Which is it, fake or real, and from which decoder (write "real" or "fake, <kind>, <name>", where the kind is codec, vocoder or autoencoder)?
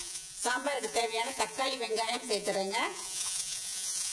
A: fake, vocoder, Vocos